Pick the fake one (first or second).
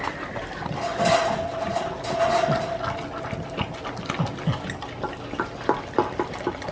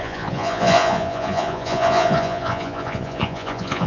second